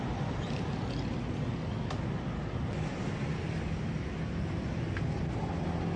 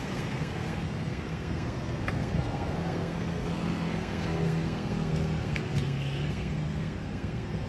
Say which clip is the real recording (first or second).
first